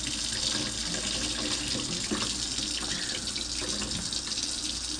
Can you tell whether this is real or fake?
real